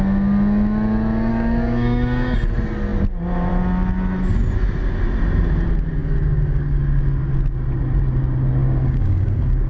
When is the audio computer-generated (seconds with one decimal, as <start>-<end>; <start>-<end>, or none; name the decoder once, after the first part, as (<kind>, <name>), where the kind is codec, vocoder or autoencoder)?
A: 1.3-2.4 (codec, DAC); 6.0-6.8; 8.6-9.7